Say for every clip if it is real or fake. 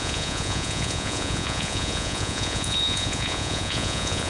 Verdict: fake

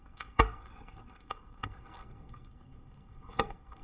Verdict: fake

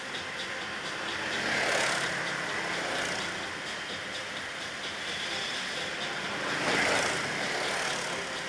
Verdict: real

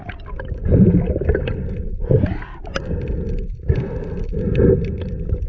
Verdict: real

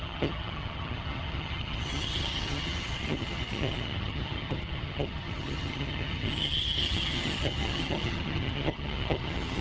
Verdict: fake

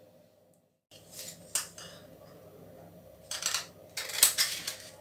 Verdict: real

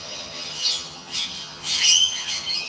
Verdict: fake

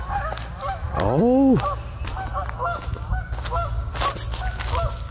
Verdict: real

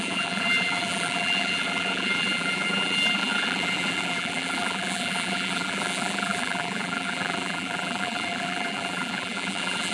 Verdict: fake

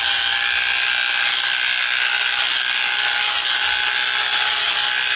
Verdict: real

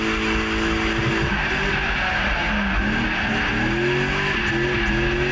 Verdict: real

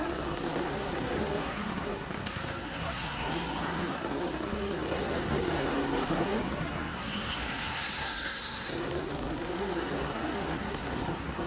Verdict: fake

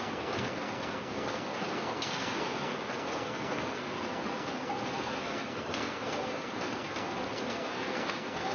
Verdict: fake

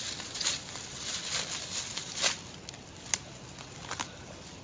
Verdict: real